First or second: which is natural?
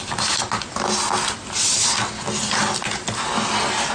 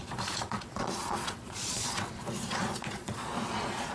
first